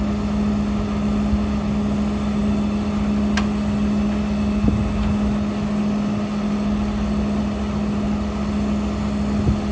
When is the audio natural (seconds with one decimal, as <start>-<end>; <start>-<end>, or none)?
0.0-9.7